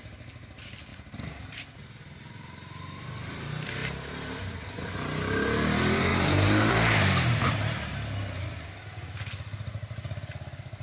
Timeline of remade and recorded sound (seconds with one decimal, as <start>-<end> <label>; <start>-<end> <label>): 0.0-0.9 recorded; 0.9-1.6 remade; 1.6-3.8 recorded; 3.8-4.4 remade; 4.4-6.1 recorded; 6.1-7.5 remade; 7.5-10.8 recorded